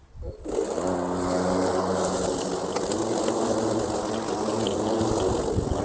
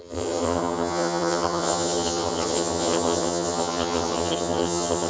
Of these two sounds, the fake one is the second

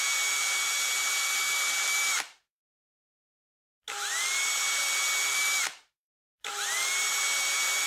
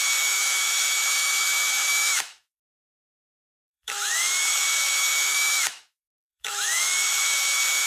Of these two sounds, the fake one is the second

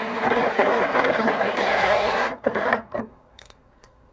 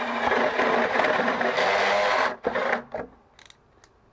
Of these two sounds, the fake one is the first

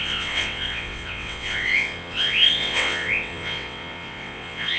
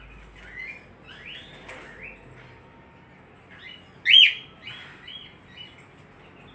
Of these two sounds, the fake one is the first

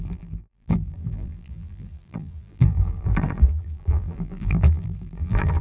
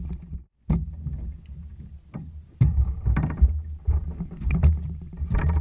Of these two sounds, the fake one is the first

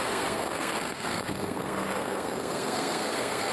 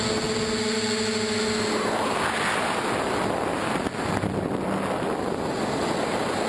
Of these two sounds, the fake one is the first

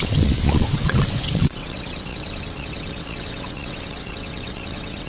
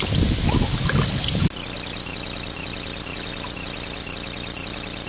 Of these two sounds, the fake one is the first